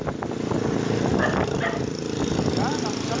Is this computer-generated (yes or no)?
no